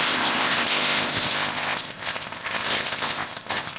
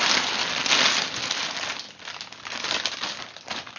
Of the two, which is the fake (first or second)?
first